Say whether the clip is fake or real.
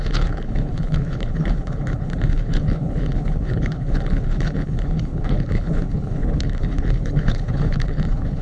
fake